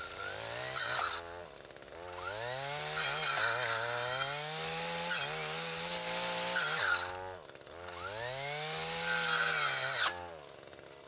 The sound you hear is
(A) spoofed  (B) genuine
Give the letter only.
B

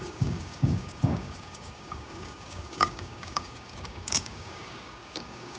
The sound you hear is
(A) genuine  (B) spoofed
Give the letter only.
B